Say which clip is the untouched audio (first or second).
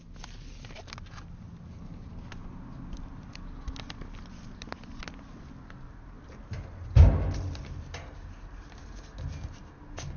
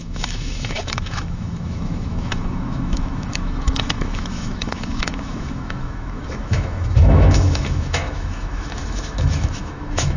first